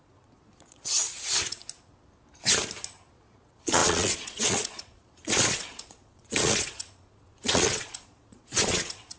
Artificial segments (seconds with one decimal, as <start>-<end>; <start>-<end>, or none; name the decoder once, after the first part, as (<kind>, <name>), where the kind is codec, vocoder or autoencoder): 0.0-1.6 (vocoder, Vocos); 3.1-9.2